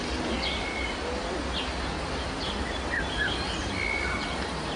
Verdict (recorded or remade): recorded